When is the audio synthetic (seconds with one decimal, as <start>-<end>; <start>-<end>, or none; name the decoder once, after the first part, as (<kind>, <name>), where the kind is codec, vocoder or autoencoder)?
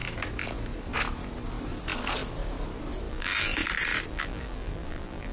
3.1-3.5 (vocoder, BigVGAN v2); 4.1-5.3